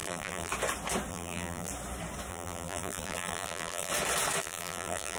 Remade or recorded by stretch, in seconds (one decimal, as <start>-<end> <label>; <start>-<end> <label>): 0.0-0.5 remade; 0.5-1.1 recorded; 1.1-1.7 remade; 1.7-2.3 recorded; 2.3-3.9 remade; 3.9-4.4 recorded; 4.4-5.2 remade